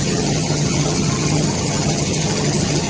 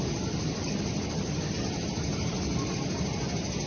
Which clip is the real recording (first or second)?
second